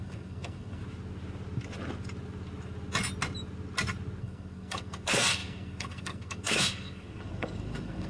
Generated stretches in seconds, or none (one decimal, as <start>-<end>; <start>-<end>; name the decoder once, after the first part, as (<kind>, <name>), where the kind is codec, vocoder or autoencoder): 0.0-0.8 (codec, SNAC); 4.2-8.1